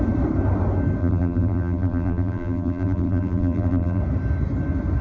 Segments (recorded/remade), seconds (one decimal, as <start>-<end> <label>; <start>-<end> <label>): 0.0-1.0 recorded; 1.0-4.0 remade; 4.0-5.0 recorded